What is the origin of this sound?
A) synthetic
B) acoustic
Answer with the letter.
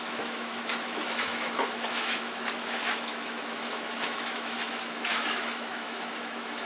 A